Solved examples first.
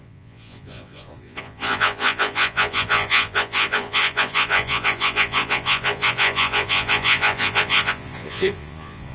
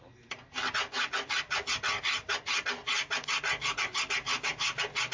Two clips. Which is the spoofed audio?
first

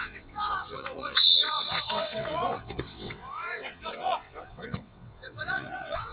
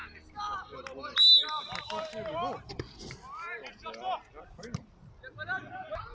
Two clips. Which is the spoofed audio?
first